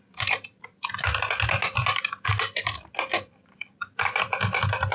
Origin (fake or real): real